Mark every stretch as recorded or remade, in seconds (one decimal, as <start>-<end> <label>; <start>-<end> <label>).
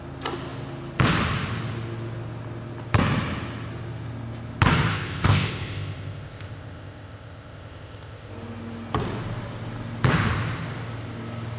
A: 0.0-4.9 recorded; 4.9-8.3 remade; 8.3-11.6 recorded